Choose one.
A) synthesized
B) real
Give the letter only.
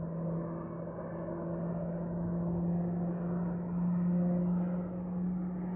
B